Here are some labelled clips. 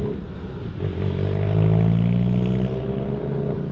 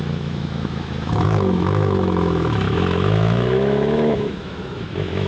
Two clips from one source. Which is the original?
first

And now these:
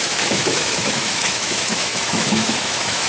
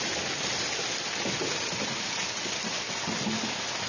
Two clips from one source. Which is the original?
second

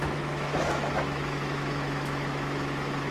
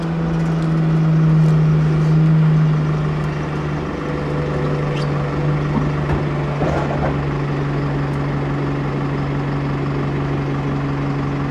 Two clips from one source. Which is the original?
second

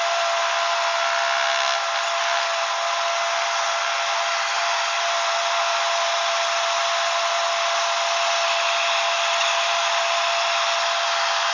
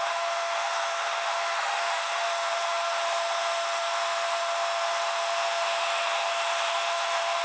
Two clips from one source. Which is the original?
first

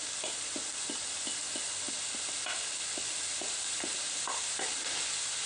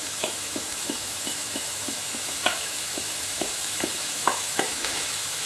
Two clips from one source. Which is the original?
first